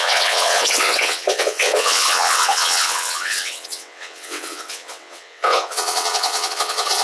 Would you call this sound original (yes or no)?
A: no